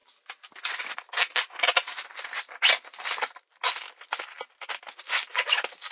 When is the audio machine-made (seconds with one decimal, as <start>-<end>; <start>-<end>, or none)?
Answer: none